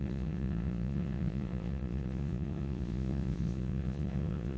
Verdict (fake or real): fake